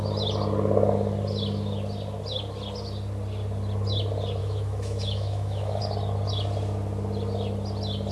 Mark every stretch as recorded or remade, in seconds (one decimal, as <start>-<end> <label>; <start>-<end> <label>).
0.0-4.4 recorded; 4.4-5.8 remade; 5.8-8.1 recorded